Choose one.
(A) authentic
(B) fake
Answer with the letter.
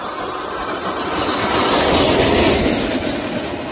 A